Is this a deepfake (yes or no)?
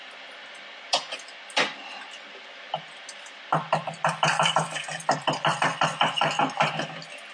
no